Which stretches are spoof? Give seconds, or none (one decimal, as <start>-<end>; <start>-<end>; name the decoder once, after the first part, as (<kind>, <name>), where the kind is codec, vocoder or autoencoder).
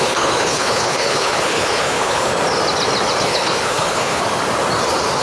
0.0-2.3 (codec, HILCodec); 3.2-4.2